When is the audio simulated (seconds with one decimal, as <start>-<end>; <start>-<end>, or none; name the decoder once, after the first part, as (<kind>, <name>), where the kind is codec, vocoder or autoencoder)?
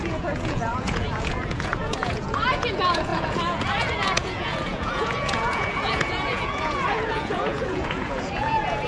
0.0-8.9 (vocoder, Vocos)